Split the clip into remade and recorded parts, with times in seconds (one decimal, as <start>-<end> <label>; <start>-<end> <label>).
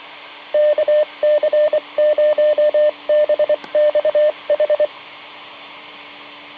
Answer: 0.0-0.6 recorded; 0.6-2.6 remade; 2.6-3.6 recorded; 3.6-5.9 remade; 5.9-6.6 recorded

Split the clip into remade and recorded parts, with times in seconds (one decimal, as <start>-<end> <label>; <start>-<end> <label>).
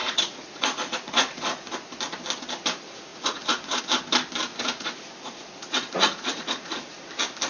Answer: 0.0-1.7 remade; 1.7-3.1 recorded; 3.1-3.8 remade; 3.8-4.5 recorded; 4.5-7.1 remade; 7.1-7.5 recorded